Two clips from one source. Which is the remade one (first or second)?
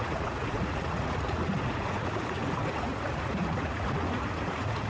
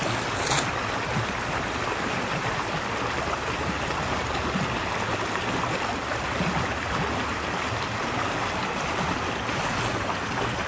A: first